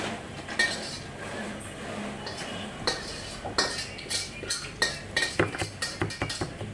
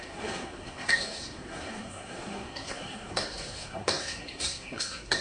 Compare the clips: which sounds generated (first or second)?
second